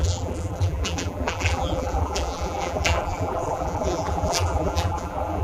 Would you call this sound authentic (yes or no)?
no